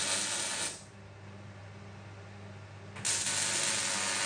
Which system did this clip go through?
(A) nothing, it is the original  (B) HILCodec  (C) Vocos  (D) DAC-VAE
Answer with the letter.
A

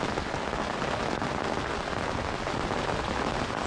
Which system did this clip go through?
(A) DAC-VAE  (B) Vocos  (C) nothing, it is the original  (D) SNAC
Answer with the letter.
C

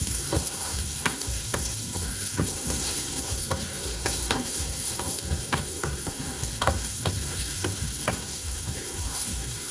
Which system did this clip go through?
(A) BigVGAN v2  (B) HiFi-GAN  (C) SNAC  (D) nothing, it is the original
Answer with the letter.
C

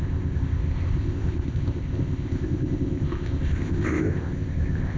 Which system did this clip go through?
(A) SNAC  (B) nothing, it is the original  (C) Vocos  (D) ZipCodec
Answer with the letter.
D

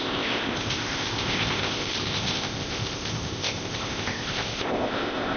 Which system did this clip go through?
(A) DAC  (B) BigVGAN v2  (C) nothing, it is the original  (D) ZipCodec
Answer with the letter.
D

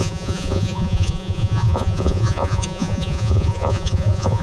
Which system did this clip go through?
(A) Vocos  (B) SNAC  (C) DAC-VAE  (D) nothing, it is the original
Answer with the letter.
A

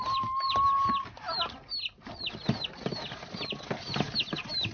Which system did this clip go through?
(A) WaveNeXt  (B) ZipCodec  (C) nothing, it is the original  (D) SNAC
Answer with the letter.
C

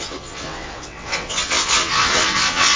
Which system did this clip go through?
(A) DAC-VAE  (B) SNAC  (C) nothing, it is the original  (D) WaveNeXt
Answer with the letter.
D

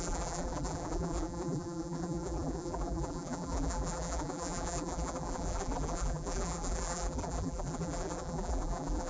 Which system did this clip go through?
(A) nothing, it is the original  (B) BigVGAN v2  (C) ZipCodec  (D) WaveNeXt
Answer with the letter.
B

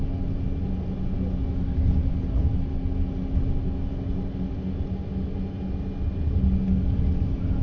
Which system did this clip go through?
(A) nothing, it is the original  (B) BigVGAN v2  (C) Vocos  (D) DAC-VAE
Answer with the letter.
A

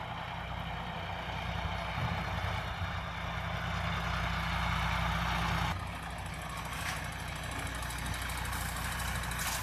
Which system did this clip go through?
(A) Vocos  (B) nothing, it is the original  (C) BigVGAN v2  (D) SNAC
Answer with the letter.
B